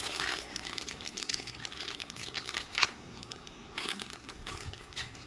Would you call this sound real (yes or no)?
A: no